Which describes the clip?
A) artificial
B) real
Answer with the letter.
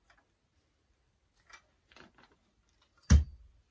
B